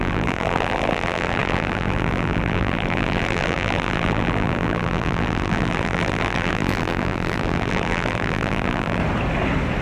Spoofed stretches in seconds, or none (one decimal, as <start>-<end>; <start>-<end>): 0.0-9.0